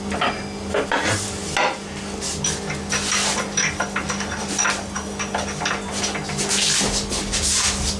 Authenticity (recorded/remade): recorded